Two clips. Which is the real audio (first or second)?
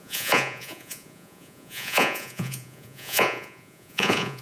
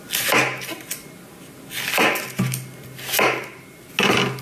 second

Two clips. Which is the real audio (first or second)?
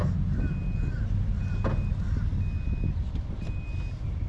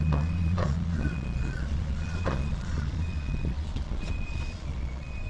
first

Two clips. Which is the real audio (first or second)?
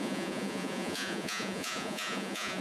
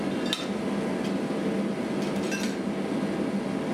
second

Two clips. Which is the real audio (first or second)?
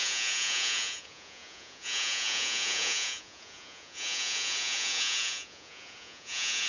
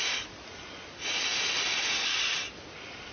second